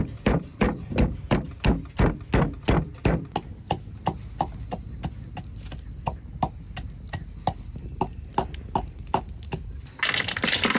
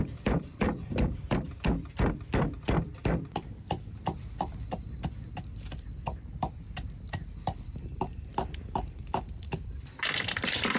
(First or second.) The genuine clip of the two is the first